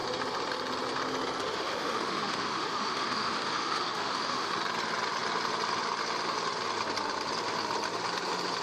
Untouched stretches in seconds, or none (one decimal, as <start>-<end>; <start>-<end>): 0.0-1.4; 4.5-8.6